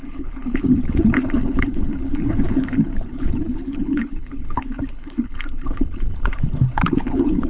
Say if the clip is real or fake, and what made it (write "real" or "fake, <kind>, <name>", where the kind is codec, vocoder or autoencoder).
fake, codec, HILCodec